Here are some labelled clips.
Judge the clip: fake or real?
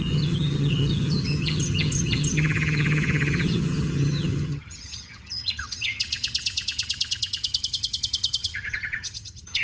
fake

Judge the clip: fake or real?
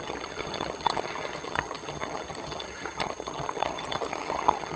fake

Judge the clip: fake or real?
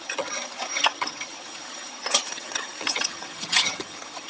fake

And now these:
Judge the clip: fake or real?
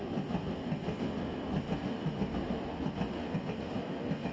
real